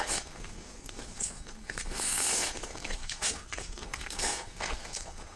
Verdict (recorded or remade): remade